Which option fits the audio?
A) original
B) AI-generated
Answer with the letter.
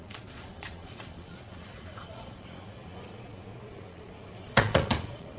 B